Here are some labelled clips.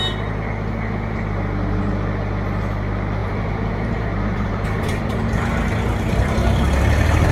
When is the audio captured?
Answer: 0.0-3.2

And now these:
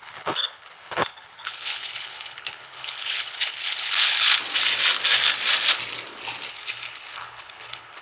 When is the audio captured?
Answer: 4.4-6.5